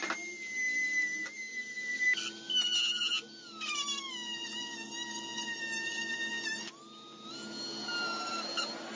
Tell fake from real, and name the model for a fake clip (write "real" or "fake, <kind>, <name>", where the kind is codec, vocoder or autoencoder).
real